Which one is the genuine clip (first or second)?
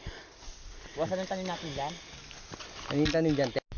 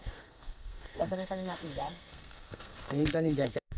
first